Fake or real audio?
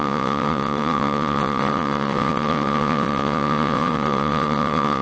fake